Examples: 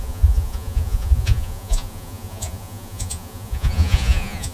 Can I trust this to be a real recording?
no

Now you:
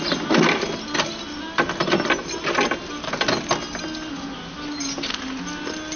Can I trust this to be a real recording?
yes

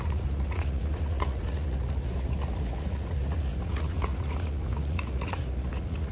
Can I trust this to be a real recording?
no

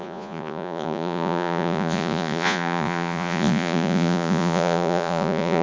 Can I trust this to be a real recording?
no